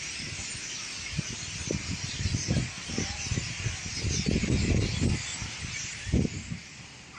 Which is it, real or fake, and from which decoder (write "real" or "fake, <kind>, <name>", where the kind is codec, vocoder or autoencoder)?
real